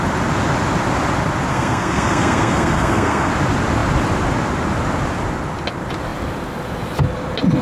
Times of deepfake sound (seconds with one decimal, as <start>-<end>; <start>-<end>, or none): 1.5-3.3